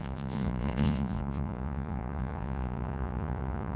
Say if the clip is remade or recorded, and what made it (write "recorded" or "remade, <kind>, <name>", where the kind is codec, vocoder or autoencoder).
remade, vocoder, Vocos